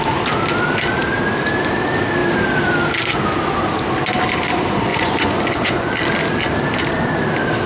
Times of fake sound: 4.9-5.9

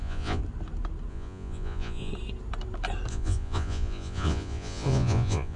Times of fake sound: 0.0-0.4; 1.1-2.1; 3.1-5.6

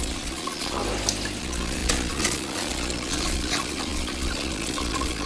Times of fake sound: 0.0-0.8; 1.4-5.3

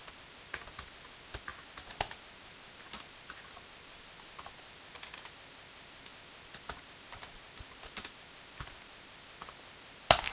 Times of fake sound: none

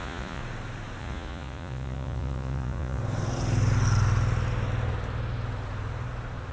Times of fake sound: 0.0-0.4; 1.0-3.0

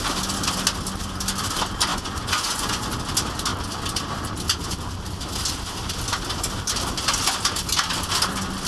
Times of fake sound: 1.9-2.9